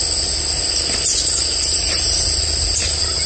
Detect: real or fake real